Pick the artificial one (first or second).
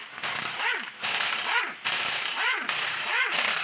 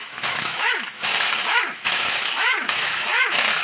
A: second